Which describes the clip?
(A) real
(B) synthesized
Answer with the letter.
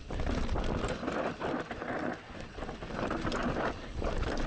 A